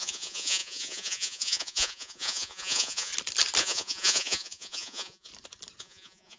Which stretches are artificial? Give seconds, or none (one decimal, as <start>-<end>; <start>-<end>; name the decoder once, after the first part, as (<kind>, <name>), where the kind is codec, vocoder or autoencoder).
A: 0.0-3.1 (vocoder, Vocos); 3.6-5.3; 5.8-6.4